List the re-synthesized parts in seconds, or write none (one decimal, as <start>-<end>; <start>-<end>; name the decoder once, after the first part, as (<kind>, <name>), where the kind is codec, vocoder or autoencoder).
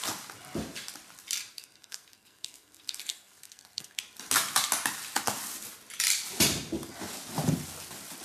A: 1.5-4.0 (codec, SNAC)